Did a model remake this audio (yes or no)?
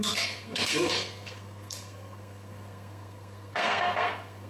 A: yes